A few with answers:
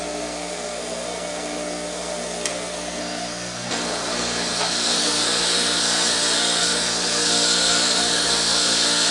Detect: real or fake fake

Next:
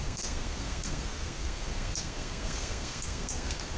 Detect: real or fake fake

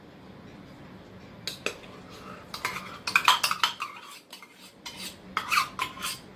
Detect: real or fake real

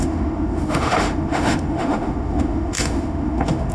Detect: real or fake fake